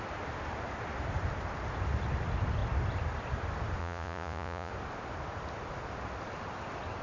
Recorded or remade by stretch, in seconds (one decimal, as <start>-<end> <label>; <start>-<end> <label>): 0.0-3.8 recorded; 3.8-4.7 remade; 4.7-7.0 recorded